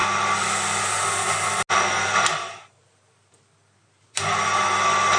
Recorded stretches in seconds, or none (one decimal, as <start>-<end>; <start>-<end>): 0.0-5.2